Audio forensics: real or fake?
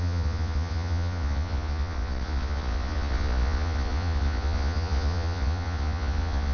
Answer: fake